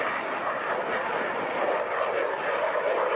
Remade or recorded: recorded